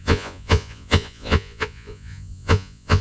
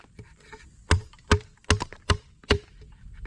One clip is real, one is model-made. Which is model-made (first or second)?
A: first